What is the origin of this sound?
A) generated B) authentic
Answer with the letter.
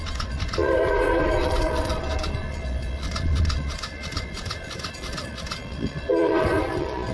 A